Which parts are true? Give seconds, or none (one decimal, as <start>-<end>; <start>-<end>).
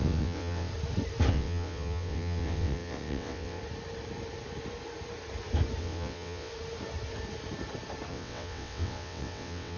0.7-1.3; 3.6-5.8; 6.5-8.1